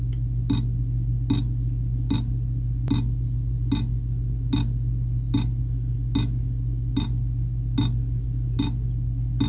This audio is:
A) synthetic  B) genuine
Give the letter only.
B